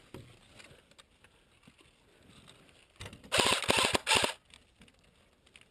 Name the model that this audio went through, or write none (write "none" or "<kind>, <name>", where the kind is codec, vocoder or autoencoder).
none